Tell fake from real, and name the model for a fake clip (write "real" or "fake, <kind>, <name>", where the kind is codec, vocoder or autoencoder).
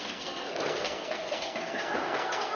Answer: fake, codec, SNAC